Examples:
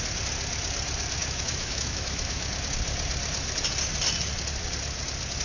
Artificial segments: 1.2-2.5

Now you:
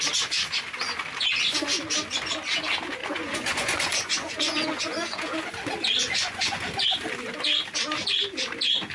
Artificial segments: 3.0-5.5; 6.0-6.6

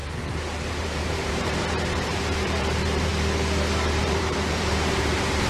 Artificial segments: 0.8-3.1; 3.9-5.5